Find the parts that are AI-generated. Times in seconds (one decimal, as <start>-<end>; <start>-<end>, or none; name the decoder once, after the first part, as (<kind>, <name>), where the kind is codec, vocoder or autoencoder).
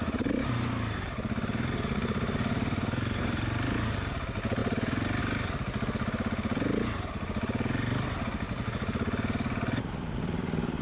none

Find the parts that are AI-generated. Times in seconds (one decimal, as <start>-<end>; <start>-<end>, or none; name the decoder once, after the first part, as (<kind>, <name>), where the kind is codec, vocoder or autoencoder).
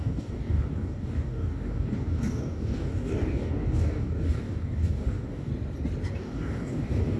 0.0-5.5 (codec, DAC); 6.1-7.2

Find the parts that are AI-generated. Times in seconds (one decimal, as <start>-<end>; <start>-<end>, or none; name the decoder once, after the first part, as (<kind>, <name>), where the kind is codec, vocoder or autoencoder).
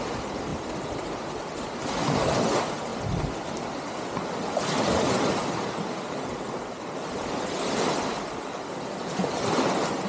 none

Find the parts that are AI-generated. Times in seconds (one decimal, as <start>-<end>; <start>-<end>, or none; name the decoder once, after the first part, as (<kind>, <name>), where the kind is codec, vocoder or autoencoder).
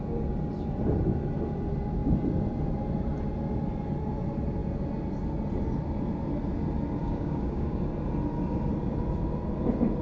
7.0-7.8 (codec, DAC)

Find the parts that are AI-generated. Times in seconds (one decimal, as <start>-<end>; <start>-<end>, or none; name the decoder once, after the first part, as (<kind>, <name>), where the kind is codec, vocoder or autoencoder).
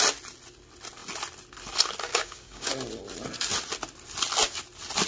2.1-2.7 (codec, DAC)